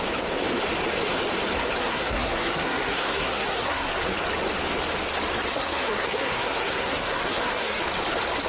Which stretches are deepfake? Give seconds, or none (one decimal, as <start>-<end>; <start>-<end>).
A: 1.8-3.9; 5.5-7.8